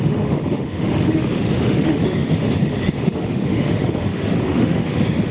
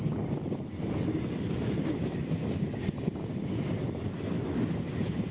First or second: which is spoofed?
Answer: first